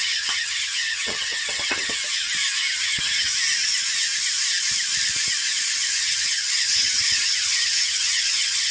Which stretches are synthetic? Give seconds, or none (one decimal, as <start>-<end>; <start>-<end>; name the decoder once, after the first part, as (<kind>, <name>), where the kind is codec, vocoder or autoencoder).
0.0-2.0 (vocoder, HiFi-GAN); 2.7-3.3; 5.9-8.7